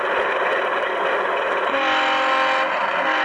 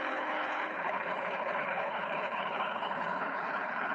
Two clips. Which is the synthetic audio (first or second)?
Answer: second